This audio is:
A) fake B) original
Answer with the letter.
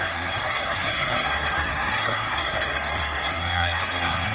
A